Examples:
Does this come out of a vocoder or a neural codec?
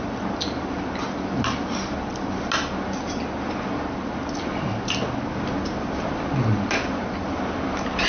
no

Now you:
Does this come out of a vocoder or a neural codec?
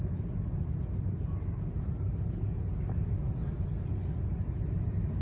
no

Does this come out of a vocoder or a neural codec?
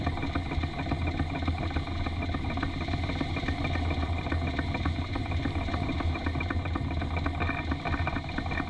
no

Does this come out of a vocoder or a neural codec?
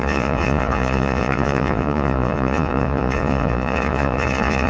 yes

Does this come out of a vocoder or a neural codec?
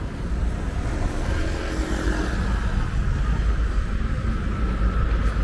no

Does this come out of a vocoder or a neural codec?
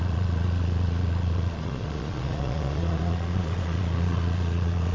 yes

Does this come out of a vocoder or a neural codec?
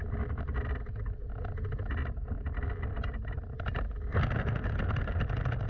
no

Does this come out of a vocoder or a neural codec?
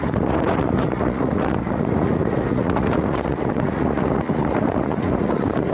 yes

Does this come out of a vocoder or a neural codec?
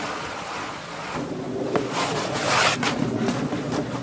yes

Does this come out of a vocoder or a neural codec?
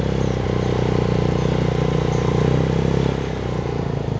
no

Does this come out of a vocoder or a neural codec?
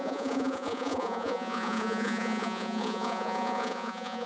yes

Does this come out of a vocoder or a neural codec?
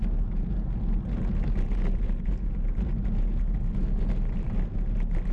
no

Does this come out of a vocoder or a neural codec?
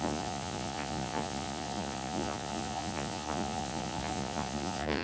yes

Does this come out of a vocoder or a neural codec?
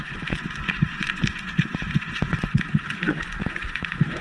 yes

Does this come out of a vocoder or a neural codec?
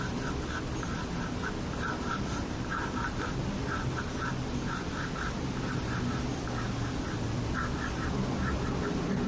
no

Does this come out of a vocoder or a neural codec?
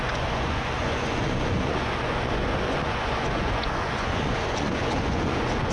yes